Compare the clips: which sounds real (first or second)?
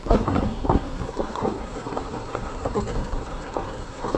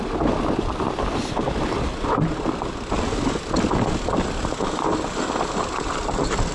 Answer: second